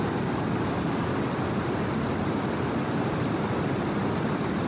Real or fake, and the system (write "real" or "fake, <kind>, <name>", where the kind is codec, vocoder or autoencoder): real